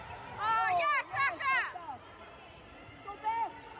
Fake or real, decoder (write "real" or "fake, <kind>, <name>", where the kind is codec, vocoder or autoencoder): real